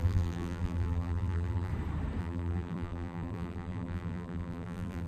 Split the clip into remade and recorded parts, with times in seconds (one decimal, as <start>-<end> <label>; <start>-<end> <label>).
0.0-1.7 remade; 1.7-2.2 recorded; 2.2-5.1 remade